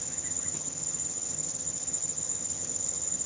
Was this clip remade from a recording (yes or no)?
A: yes